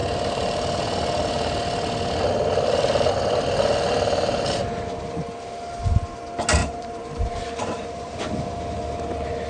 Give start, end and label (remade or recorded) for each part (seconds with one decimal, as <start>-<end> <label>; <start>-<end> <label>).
0.0-0.8 remade; 0.8-6.6 recorded; 6.6-8.2 remade; 8.2-9.5 recorded